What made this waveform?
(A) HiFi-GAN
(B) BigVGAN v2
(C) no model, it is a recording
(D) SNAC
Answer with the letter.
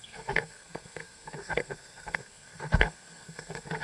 D